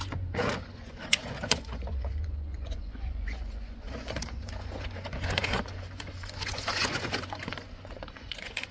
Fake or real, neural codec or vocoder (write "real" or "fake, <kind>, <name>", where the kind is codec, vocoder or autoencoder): fake, vocoder, Vocos